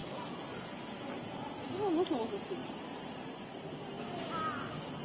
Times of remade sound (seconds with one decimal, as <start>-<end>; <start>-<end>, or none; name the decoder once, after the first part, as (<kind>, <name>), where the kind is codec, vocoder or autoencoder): none